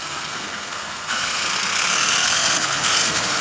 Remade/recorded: remade